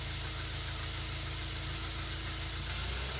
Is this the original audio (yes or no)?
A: yes